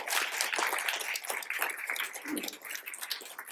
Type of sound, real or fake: real